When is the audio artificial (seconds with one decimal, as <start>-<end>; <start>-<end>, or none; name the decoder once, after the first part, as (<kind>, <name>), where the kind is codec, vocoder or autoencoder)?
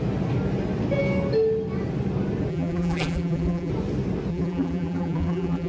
2.5-3.7 (vocoder, BigVGAN v2); 4.3-5.7